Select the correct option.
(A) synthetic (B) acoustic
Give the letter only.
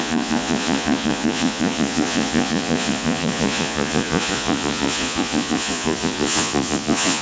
A